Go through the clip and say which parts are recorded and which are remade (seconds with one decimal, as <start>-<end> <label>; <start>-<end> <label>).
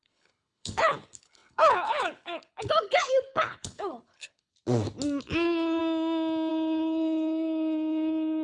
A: 0.0-4.5 remade; 4.5-5.2 recorded; 5.2-5.8 remade; 5.8-6.5 recorded; 6.5-8.4 remade